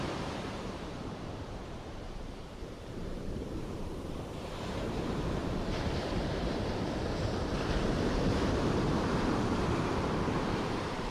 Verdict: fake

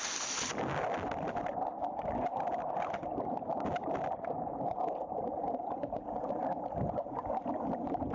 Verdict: real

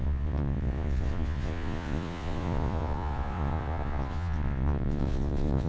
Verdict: fake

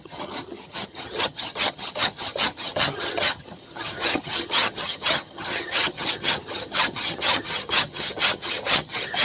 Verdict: fake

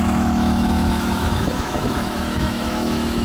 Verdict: fake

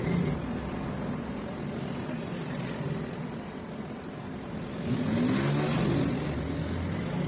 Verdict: real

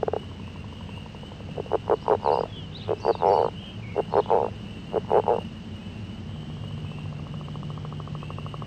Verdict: real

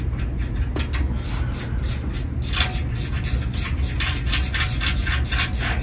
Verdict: real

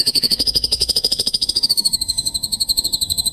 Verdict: fake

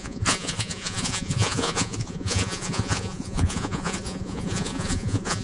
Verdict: fake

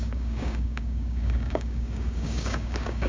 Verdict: fake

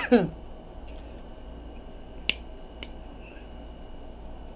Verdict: real